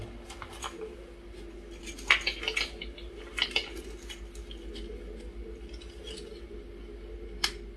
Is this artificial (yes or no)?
no